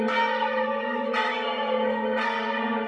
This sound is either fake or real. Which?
fake